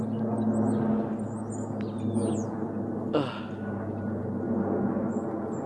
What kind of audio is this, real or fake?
real